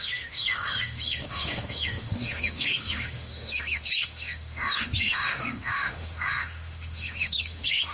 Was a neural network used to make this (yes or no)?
yes